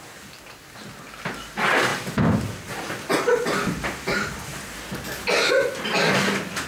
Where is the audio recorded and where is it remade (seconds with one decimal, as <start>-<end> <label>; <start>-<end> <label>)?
0.0-6.7 recorded